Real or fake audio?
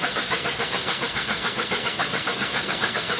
fake